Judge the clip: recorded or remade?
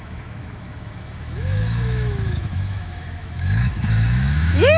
remade